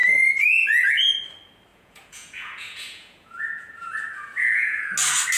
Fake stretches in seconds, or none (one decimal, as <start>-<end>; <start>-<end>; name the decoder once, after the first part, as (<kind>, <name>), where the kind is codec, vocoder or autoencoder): 0.0-1.1 (vocoder, Vocos); 1.7-4.9